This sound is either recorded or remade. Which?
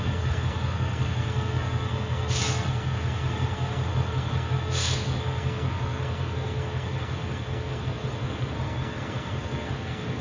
remade